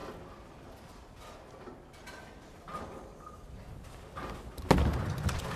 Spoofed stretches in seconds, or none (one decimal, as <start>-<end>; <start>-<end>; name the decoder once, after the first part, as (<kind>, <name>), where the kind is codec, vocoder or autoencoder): none